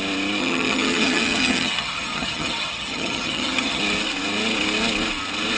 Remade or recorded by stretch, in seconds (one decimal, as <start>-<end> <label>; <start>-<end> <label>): 0.0-0.4 recorded; 0.4-3.8 remade; 3.8-5.6 recorded